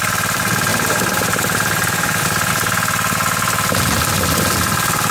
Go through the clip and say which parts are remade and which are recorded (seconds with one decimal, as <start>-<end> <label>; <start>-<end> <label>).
0.0-0.7 recorded; 0.7-2.5 remade; 2.5-5.1 recorded